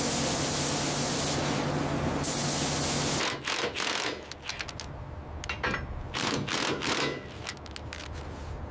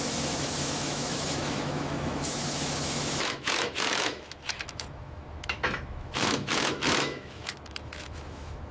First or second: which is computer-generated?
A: second